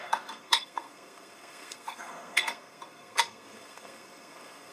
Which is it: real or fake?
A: fake